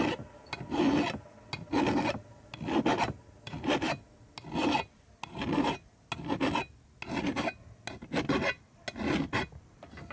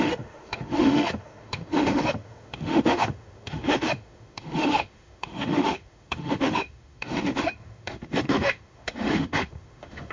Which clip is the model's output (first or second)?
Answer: second